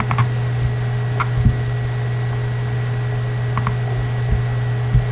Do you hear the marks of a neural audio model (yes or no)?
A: no